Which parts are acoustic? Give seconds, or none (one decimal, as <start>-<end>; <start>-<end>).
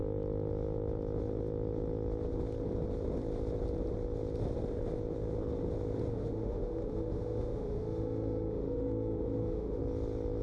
0.0-6.1; 9.8-10.4